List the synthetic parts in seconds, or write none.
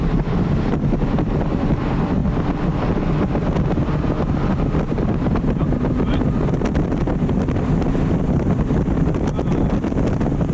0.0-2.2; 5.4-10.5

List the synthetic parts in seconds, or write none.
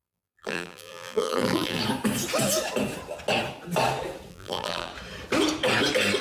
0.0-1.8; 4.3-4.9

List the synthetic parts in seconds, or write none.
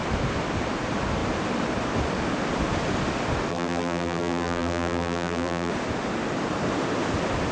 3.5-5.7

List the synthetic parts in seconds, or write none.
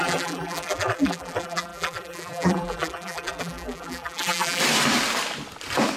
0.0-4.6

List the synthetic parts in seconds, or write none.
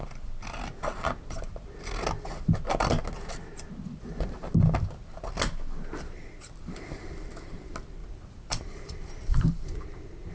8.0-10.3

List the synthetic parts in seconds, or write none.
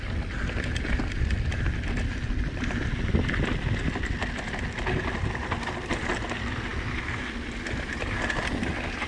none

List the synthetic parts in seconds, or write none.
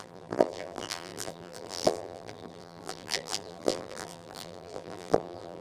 0.0-5.6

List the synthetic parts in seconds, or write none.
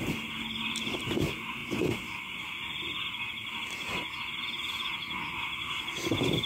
1.6-2.2